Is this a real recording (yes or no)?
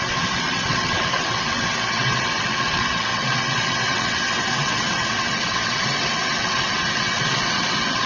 no